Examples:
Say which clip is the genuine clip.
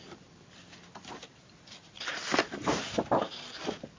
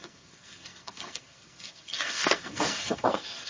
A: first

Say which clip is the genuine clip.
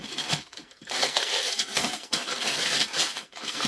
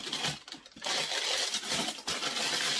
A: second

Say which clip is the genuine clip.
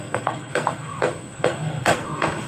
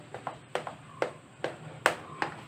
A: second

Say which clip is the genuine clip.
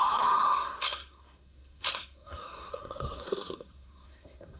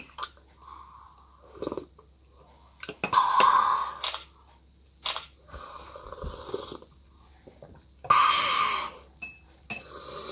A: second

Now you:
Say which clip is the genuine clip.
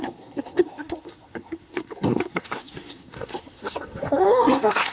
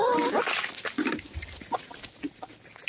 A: second